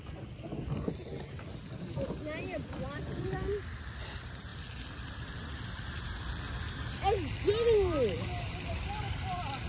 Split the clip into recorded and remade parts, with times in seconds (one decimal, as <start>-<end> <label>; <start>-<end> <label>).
0.0-9.7 recorded